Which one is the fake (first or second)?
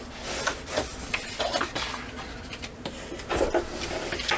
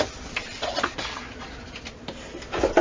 second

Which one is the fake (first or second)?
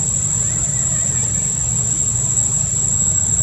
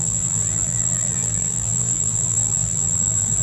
second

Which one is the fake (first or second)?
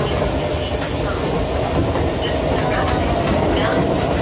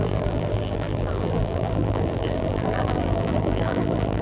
second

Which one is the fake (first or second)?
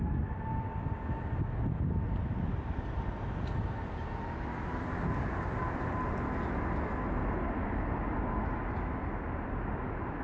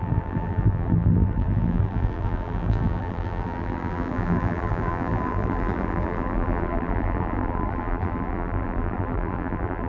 second